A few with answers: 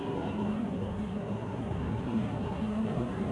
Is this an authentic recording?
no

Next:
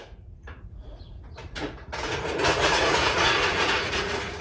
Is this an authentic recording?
no